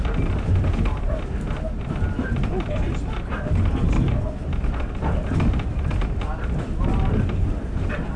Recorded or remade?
recorded